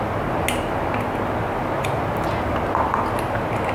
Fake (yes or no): no